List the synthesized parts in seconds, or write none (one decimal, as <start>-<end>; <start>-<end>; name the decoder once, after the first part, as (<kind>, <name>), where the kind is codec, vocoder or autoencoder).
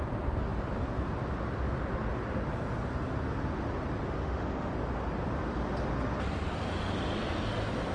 4.2-4.7 (autoencoder, DAC-VAE)